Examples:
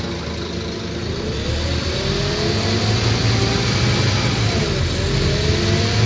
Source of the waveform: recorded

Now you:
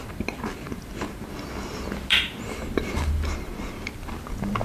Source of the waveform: recorded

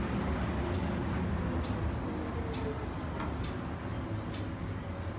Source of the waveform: recorded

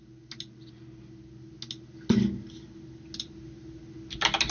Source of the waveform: recorded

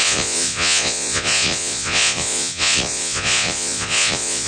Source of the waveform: remade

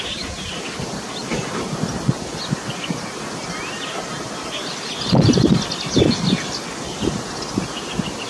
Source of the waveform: recorded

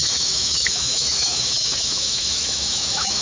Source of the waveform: remade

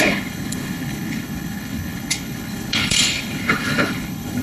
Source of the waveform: remade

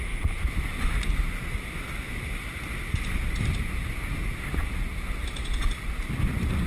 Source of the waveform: recorded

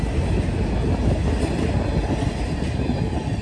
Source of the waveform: recorded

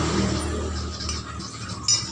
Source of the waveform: recorded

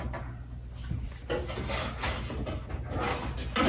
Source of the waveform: recorded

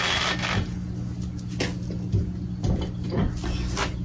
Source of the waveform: recorded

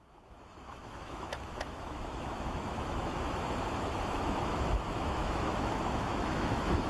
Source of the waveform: remade